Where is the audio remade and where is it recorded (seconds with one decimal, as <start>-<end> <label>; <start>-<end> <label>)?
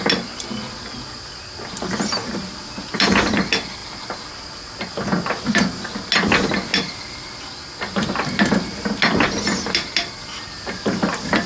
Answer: 0.0-11.5 recorded